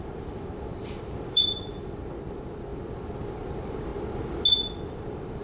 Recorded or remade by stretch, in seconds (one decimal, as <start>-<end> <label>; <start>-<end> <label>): 0.0-2.7 remade; 2.7-3.5 recorded; 3.5-3.9 remade; 3.9-4.8 recorded; 4.8-5.4 remade

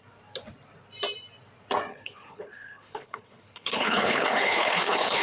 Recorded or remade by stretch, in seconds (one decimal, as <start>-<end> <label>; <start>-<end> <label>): 0.0-1.9 recorded; 1.9-5.2 remade